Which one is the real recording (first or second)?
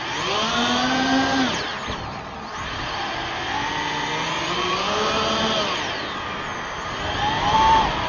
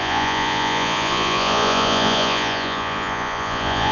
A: first